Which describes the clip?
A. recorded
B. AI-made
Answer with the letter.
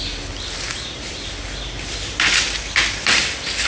A